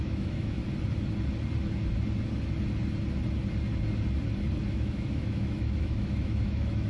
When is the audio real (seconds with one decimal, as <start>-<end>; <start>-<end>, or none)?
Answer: 0.6-4.7